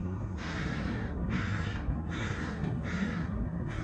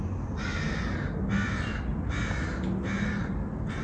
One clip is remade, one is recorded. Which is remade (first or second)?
first